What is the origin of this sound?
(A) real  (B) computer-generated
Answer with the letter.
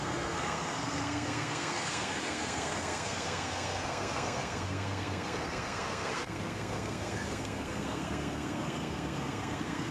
B